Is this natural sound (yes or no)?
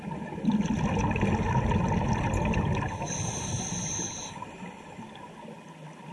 yes